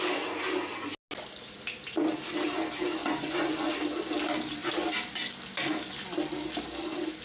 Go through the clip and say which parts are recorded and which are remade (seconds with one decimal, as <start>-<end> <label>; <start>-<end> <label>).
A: 0.0-3.0 recorded; 3.0-3.7 remade; 3.7-7.2 recorded